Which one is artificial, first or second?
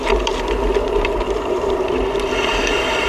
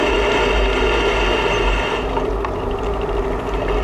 first